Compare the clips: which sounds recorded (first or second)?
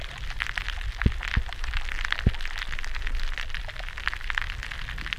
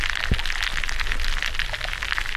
second